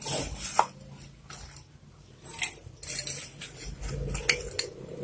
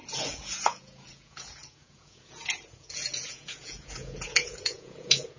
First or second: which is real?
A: first